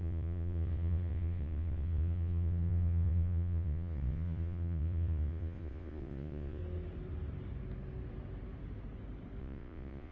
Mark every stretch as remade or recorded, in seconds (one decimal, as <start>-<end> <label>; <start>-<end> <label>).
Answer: 0.0-6.6 remade; 6.6-9.4 recorded; 9.4-10.1 remade